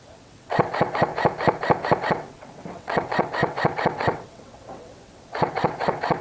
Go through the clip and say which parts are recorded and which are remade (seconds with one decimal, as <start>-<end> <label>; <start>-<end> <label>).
0.0-1.1 remade; 1.1-2.0 recorded; 2.0-6.2 remade